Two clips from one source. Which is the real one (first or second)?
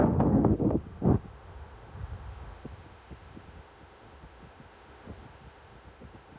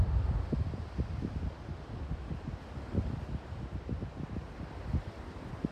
second